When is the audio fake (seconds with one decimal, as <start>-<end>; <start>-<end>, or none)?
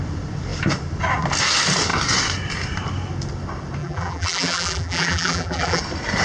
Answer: 3.8-5.8